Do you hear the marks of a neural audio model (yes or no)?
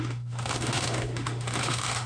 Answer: yes